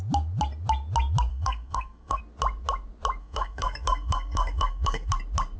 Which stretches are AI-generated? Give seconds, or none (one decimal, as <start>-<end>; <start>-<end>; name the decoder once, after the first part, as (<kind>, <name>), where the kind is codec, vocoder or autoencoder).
1.3-2.2 (codec, SNAC); 3.2-5.1